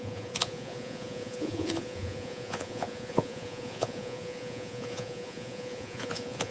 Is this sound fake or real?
fake